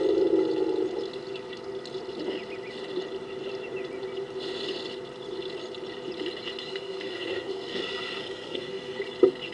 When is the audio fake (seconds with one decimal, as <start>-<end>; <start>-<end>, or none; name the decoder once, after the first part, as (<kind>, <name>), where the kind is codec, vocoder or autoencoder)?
6.6-9.0 (codec, SNAC)